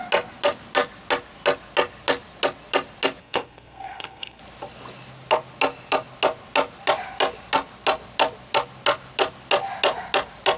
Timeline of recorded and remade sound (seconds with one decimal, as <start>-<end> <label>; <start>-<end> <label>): 0.0-3.2 recorded; 3.2-4.4 remade; 4.4-10.6 recorded